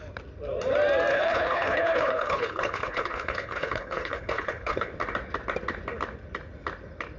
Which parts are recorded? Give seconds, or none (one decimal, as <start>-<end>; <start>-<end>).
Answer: 0.0-1.1; 4.9-7.2

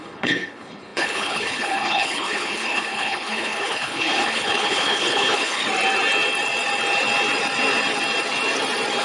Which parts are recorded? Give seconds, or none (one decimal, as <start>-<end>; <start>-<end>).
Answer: 5.6-9.0

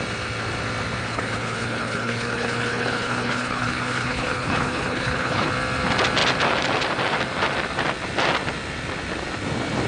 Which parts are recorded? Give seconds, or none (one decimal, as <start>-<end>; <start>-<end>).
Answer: 0.0-1.0; 5.5-9.9

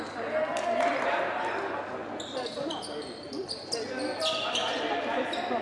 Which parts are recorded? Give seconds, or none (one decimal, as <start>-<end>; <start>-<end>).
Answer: 0.0-5.6

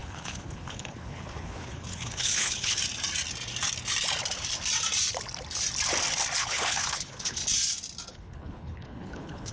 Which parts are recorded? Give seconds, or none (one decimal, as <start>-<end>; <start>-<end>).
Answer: 2.8-6.4; 7.4-8.1

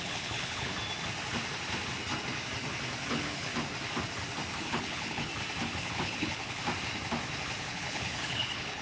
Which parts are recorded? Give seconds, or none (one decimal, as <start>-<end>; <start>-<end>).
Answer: 0.7-3.1; 3.5-4.6; 5.3-5.8; 6.6-7.7

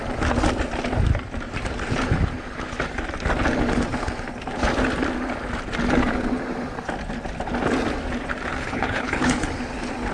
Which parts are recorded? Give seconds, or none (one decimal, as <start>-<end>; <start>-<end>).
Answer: 0.0-8.6; 9.4-10.1